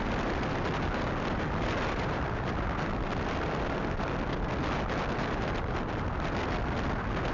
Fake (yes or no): no